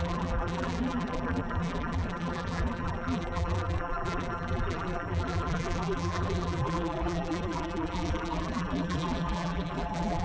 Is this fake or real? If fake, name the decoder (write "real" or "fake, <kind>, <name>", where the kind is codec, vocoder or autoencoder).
fake, vocoder, BigVGAN v2